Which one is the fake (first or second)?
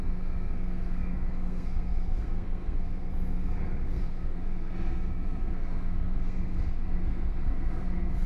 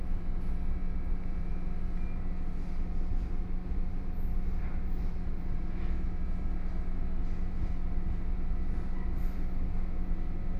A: first